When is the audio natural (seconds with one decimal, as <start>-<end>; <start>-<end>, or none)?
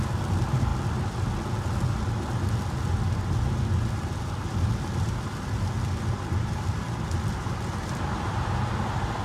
0.0-9.2